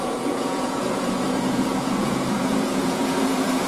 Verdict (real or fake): fake